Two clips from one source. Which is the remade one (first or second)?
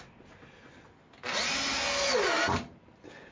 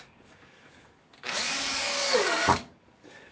second